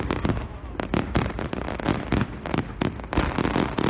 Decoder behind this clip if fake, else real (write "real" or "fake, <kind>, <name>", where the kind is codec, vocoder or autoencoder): real